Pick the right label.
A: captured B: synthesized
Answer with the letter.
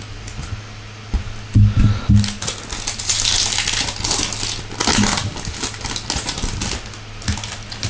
A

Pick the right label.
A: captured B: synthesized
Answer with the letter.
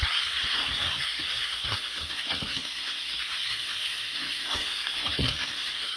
B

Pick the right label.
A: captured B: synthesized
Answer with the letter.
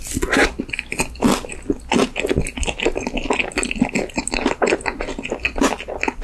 A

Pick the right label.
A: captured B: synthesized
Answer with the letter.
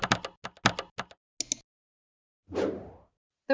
A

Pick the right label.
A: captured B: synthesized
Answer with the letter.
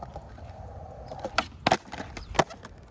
A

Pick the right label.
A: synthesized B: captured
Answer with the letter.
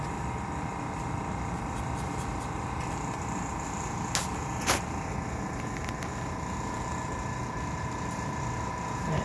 B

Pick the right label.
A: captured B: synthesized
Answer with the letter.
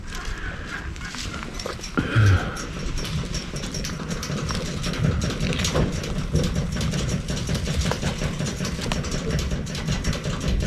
A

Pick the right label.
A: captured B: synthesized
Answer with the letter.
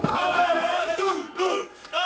B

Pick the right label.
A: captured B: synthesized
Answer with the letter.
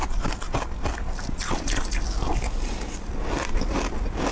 A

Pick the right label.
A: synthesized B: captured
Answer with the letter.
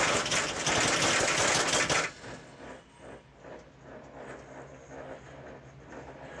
B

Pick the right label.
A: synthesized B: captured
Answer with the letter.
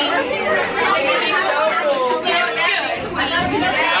B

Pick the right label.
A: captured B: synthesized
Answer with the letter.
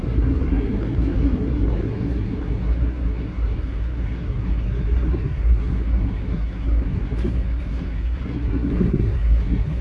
B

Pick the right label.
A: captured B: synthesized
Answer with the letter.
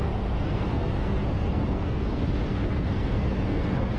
B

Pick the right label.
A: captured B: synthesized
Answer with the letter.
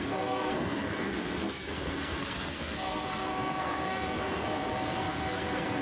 B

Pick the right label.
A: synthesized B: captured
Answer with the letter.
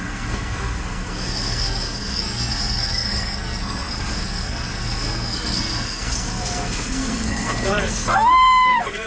A